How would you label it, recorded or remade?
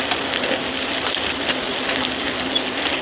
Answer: recorded